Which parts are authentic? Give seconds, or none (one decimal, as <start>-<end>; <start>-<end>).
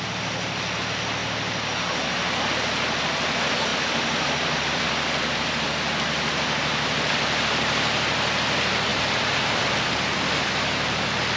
0.0-3.7; 5.6-8.9; 9.9-11.4